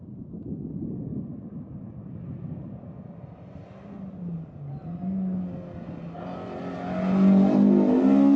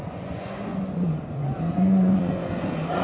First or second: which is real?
first